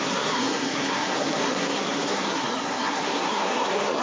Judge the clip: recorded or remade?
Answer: remade